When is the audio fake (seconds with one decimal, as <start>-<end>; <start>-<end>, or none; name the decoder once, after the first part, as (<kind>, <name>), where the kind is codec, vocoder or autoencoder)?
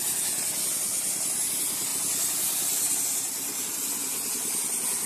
none